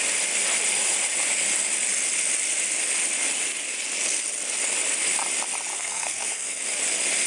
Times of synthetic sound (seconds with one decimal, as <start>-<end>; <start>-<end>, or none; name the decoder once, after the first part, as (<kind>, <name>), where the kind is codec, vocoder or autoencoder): 5.7-6.6 (codec, SNAC)